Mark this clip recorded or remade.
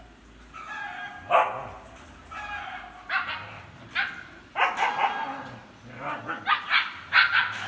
recorded